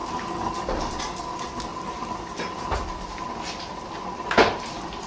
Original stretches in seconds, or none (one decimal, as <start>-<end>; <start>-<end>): 1.0-1.7

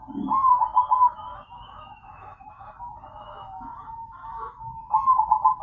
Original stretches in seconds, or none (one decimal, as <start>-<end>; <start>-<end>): 0.0-0.7; 2.7-3.1; 4.9-5.6

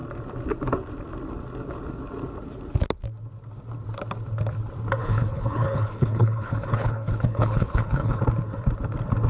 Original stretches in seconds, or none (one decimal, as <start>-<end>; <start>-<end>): 0.0-5.0; 8.2-9.3

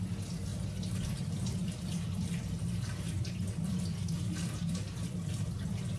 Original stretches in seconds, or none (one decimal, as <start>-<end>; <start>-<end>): 0.0-6.0

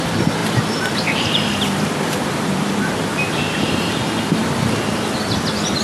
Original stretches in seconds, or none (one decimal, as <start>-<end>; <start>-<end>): 0.0-0.4; 3.9-5.8

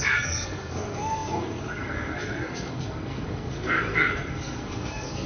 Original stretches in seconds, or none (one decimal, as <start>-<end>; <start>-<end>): none